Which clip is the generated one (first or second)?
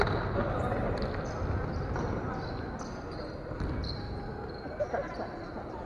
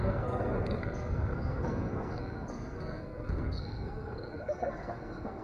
second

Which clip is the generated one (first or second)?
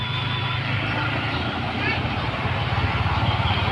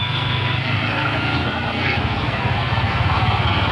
second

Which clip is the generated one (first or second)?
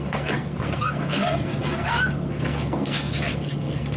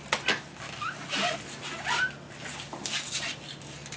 first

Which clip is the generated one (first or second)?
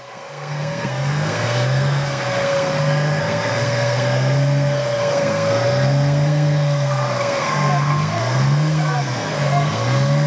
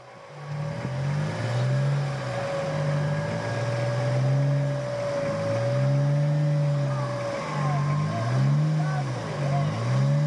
first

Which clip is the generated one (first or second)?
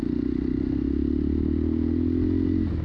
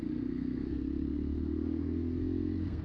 second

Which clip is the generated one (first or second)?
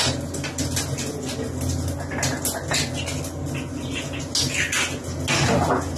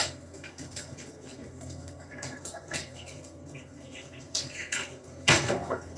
second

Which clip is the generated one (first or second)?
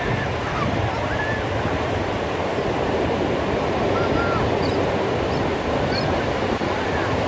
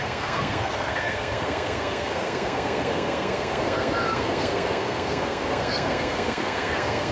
second